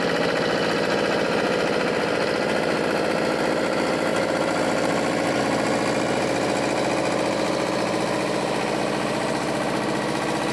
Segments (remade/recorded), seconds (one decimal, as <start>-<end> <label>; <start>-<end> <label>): 0.0-4.1 recorded; 4.1-5.4 remade; 5.4-10.5 recorded